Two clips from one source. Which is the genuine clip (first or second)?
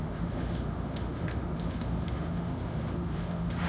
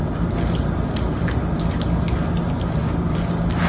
second